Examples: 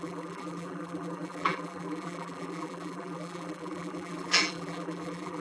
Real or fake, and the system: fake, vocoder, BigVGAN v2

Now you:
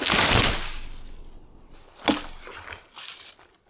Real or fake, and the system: real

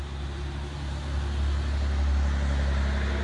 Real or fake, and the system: real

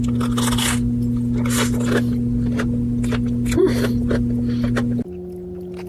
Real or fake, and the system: real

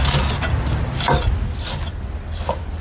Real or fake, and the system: real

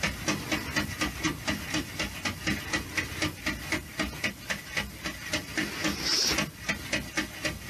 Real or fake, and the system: real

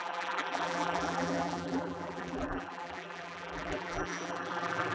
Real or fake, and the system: fake, vocoder, BigVGAN v2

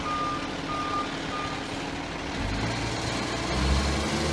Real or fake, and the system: real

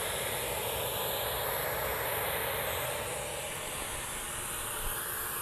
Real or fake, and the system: real